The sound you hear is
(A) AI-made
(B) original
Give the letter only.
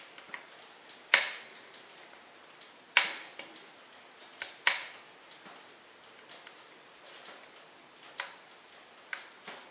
B